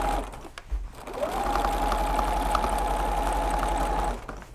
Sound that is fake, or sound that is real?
real